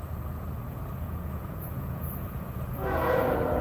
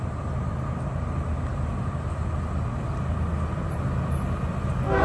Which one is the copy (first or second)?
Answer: first